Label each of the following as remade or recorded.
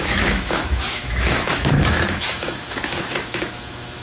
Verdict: remade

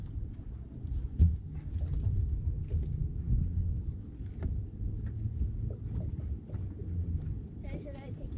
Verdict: recorded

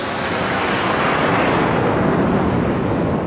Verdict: recorded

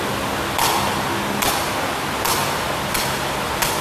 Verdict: recorded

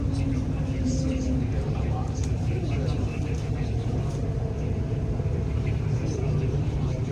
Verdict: recorded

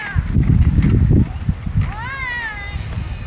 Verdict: recorded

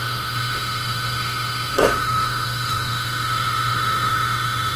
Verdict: remade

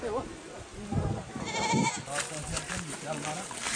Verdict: recorded